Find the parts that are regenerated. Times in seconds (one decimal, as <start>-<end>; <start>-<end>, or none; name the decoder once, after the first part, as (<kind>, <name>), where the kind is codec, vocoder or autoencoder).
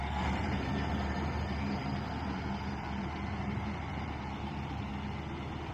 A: 0.0-4.9 (vocoder, BigVGAN v2)